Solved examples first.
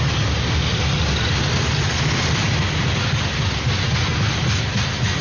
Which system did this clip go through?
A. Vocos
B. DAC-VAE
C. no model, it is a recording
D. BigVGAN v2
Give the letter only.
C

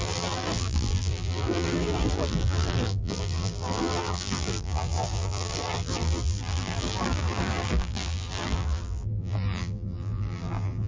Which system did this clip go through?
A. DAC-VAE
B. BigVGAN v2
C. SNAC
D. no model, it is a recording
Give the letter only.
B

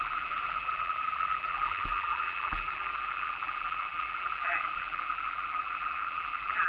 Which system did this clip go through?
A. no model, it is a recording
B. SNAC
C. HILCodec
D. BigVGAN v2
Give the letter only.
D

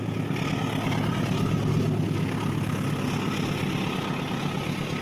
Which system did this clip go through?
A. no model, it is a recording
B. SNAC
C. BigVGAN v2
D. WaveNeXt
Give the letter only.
A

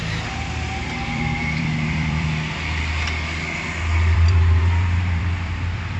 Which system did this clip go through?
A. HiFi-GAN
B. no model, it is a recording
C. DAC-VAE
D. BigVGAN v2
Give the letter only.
D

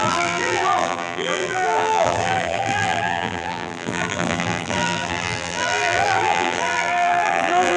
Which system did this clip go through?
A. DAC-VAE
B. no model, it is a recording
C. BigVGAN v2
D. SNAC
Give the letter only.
C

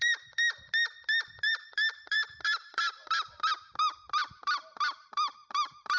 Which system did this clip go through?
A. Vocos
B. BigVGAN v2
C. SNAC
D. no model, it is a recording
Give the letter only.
B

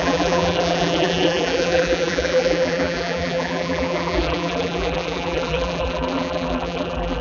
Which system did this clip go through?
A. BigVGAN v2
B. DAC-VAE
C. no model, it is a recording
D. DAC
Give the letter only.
A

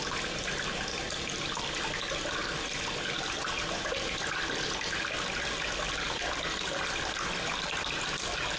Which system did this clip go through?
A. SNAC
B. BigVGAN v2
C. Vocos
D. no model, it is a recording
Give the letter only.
D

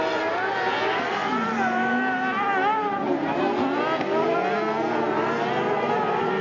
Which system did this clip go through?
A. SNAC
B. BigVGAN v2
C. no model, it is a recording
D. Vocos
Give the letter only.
C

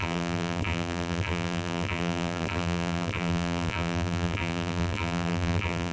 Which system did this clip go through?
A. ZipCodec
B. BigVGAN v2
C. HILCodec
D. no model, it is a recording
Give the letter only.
B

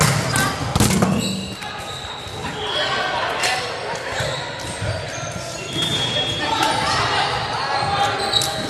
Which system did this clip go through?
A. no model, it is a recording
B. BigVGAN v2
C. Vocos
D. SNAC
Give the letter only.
A